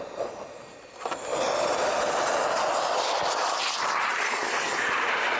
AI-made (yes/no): no